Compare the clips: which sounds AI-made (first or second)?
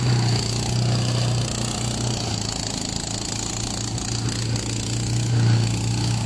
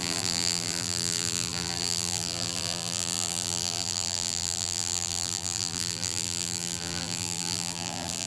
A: second